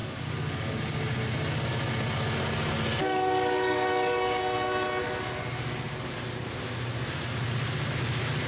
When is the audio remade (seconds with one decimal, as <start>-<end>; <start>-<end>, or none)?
0.0-0.8; 3.0-4.4